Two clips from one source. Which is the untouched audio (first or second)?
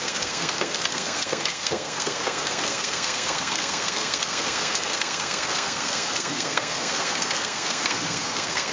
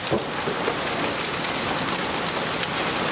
second